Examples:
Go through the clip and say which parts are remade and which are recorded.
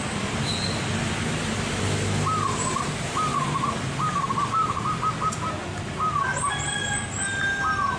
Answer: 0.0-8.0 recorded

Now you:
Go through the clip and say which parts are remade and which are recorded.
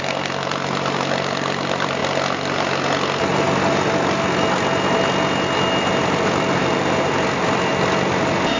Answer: 0.0-2.0 remade; 2.0-5.9 recorded; 5.9-8.6 remade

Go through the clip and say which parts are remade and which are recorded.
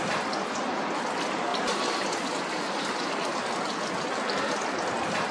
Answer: 0.0-1.5 recorded; 1.5-3.9 remade; 3.9-5.3 recorded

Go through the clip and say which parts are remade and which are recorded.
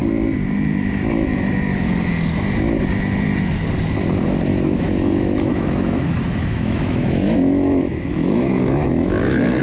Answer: 0.0-4.5 recorded; 4.5-9.6 remade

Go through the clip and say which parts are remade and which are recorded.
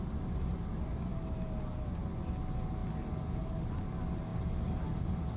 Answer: 0.0-5.4 recorded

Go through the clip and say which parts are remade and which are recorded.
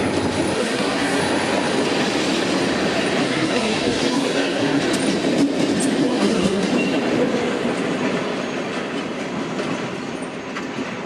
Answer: 0.0-0.6 recorded; 0.6-1.2 remade; 1.2-3.2 recorded; 3.2-4.8 remade; 4.8-6.0 recorded; 6.0-6.7 remade; 6.7-11.1 recorded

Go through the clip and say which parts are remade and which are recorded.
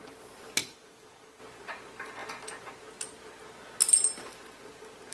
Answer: 0.0-0.6 recorded; 0.6-1.4 remade; 1.4-5.1 recorded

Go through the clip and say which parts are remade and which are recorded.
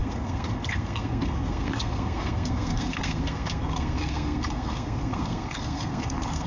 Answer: 0.0-6.5 remade